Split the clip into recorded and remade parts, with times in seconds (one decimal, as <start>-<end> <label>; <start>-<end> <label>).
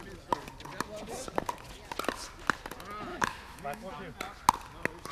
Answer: 0.0-3.1 recorded; 3.1-3.9 remade; 3.9-5.1 recorded